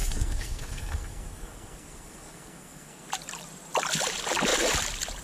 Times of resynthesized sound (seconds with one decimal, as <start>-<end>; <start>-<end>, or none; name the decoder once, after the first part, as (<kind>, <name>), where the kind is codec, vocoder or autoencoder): 0.0-3.1 (codec, SNAC)